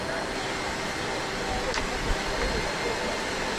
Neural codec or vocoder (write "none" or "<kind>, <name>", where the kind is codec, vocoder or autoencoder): none